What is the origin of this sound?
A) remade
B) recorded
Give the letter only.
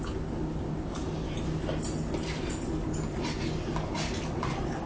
B